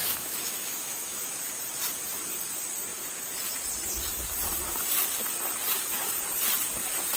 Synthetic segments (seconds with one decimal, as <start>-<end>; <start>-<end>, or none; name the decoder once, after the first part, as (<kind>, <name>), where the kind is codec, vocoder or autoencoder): 0.0-1.5 (autoencoder, DAC-VAE)